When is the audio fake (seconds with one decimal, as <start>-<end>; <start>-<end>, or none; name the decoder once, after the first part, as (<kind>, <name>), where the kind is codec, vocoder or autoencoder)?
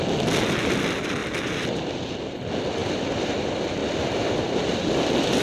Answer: 1.2-2.4 (vocoder, BigVGAN v2); 2.8-3.3; 3.8-5.4